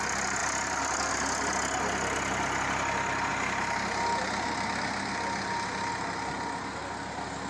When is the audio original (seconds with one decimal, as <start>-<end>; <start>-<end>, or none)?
0.0-7.5